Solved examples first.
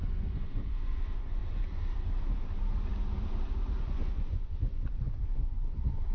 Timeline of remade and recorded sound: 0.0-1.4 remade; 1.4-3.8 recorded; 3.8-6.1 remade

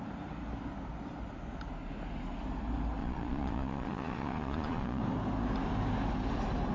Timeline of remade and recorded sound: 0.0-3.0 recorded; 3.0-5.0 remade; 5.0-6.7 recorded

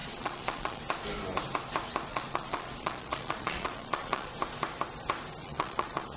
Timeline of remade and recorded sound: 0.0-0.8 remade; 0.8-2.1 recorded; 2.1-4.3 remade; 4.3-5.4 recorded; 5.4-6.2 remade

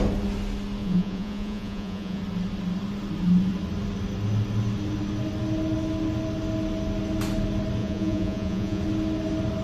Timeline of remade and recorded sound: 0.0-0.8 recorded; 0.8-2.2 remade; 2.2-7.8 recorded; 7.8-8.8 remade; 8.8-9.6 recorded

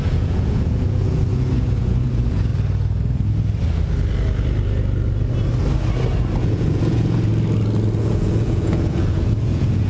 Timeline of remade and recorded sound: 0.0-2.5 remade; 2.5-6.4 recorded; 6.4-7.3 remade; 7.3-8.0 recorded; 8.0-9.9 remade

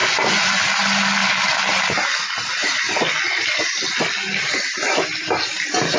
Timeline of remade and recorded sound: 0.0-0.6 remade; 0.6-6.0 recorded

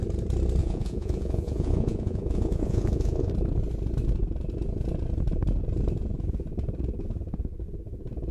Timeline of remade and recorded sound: 0.0-0.6 recorded; 0.6-3.3 remade; 3.3-8.3 recorded